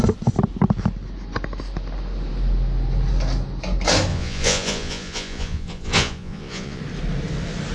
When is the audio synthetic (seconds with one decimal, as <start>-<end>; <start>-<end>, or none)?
4.1-6.8

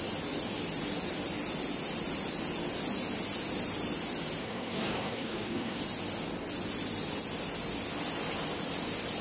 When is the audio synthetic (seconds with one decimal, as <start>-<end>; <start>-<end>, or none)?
4.4-5.8

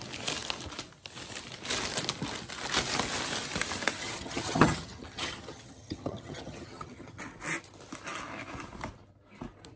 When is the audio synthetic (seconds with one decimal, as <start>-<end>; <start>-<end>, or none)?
4.0-7.2

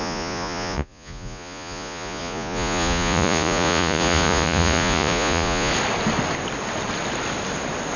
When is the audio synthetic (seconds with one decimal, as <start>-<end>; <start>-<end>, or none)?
0.0-5.7

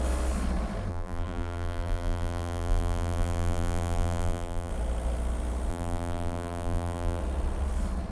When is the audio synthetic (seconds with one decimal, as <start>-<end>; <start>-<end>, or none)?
0.9-4.7; 5.7-7.2

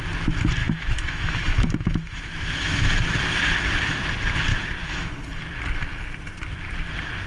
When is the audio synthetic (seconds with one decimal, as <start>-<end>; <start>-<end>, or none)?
0.6-2.8; 4.5-5.1